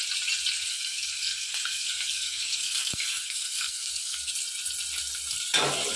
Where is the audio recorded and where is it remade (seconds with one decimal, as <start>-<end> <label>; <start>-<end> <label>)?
0.0-0.7 recorded; 0.7-4.3 remade; 4.3-6.0 recorded